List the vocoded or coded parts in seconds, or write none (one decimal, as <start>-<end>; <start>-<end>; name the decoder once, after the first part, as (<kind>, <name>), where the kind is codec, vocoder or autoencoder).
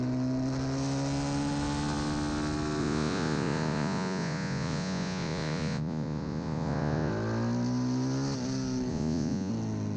2.8-7.1 (vocoder, Vocos); 8.9-9.5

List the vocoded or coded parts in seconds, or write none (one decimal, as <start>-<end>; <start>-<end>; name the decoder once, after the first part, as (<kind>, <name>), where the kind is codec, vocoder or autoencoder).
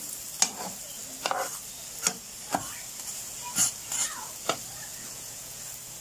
4.9-5.6 (vocoder, Vocos)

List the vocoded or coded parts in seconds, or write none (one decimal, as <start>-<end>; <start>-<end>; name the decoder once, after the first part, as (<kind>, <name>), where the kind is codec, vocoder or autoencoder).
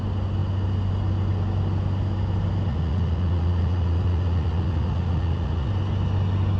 2.7-5.7 (vocoder, Vocos)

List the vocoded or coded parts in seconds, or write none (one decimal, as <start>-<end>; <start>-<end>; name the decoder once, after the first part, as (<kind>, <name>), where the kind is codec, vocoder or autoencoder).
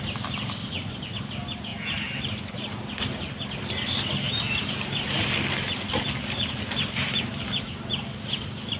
0.6-1.2 (vocoder, Vocos)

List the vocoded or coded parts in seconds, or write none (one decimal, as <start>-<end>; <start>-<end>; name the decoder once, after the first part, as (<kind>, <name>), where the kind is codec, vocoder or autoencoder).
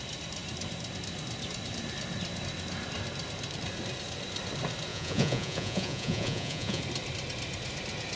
4.9-6.8 (vocoder, Vocos)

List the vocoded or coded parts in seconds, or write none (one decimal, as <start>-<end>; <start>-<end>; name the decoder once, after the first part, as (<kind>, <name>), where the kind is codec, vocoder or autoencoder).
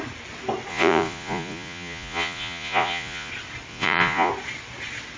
0.7-3.3 (vocoder, Vocos); 3.7-4.3